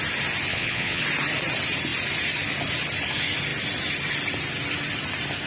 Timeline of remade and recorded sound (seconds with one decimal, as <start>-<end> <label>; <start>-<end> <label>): 0.0-0.5 recorded; 0.5-1.0 remade; 1.0-5.5 recorded